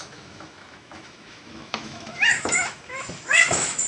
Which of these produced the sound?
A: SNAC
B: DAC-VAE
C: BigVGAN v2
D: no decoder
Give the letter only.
B